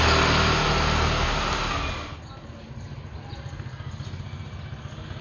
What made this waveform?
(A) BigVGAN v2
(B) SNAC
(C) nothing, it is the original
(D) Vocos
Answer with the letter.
C